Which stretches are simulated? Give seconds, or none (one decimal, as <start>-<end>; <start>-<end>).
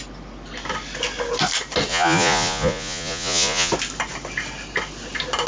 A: 1.9-3.7